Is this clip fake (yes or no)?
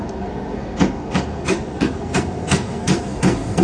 yes